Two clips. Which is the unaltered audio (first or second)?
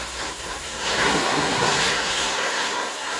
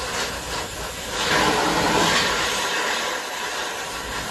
second